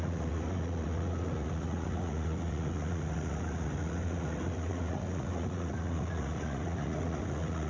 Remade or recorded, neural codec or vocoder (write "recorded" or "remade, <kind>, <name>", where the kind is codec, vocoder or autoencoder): remade, vocoder, Vocos